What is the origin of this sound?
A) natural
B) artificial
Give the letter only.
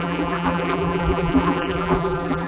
B